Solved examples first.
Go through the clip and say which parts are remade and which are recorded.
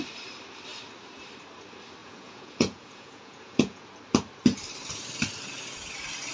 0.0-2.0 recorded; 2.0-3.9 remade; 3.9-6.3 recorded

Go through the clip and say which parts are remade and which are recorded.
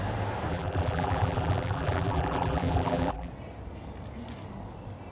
0.0-0.5 recorded; 0.5-3.3 remade; 3.3-5.1 recorded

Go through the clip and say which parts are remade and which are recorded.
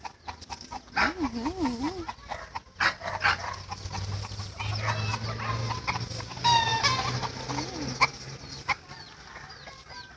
0.0-10.2 recorded